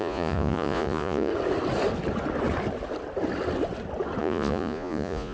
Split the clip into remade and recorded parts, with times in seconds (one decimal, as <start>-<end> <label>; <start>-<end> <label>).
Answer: 0.0-1.3 remade; 1.3-4.2 recorded; 4.2-5.3 remade